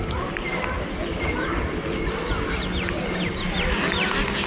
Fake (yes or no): no